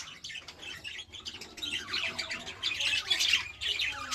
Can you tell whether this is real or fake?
real